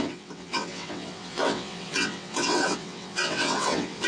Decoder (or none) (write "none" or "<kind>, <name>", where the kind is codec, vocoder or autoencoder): vocoder, WaveNeXt